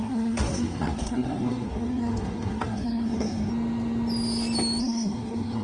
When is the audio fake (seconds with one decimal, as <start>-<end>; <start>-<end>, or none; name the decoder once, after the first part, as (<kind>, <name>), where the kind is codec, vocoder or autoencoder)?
0.0-3.5 (codec, SNAC); 4.8-5.6